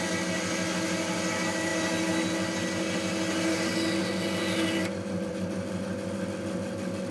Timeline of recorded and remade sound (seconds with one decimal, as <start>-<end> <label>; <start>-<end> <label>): 0.0-7.1 recorded